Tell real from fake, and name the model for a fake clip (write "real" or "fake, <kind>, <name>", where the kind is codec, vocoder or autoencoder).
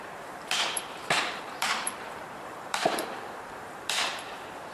fake, vocoder, BigVGAN v2